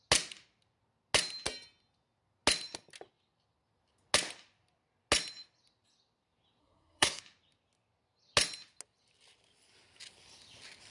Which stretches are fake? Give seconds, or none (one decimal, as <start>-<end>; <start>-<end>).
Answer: 6.6-7.2